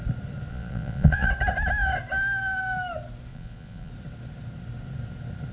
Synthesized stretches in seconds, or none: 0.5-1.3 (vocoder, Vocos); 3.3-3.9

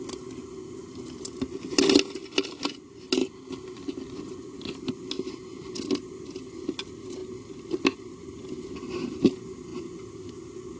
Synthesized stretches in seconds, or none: none

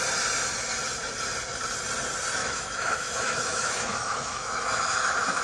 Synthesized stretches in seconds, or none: 2.4-5.4 (autoencoder, DAC-VAE)

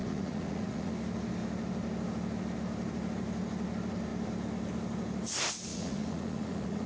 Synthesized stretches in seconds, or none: 0.0-0.9 (vocoder, Vocos); 5.7-6.9

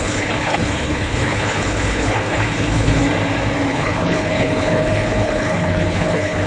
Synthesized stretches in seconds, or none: 0.0-3.0 (codec, HILCodec); 3.7-6.5

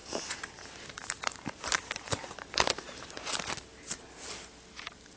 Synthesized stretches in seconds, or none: 0.0-0.5 (vocoder, BigVGAN v2); 1.0-3.3; 3.7-4.5